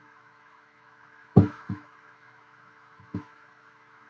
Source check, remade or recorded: remade